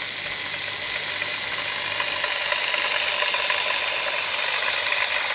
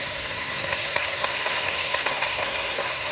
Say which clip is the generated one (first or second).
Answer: second